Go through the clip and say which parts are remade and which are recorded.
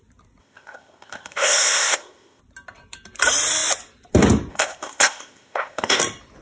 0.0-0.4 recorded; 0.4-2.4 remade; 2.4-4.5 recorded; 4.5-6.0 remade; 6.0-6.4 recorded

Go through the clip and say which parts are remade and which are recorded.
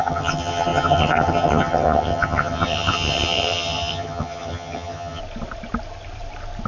0.0-5.2 remade; 5.2-6.7 recorded